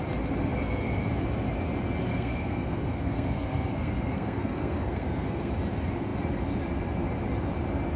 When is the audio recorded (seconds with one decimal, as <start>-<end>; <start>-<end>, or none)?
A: 0.0-2.1; 5.5-8.0